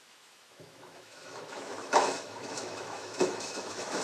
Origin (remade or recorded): remade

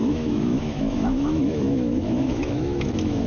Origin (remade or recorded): remade